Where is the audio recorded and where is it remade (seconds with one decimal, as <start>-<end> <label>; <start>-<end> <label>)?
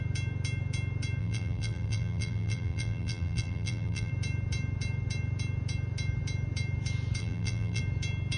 0.0-1.2 recorded; 1.2-4.1 remade; 4.1-7.2 recorded; 7.2-7.8 remade; 7.8-8.4 recorded